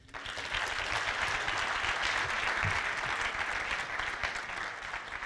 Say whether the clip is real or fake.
real